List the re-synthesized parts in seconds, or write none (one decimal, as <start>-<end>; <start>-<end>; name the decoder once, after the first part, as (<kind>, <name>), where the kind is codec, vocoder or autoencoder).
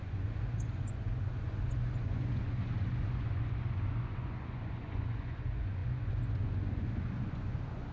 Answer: 0.0-7.9 (vocoder, Vocos)